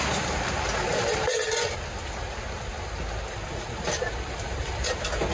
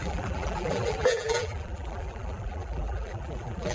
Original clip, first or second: first